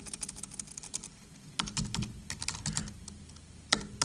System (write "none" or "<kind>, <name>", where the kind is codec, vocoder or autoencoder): none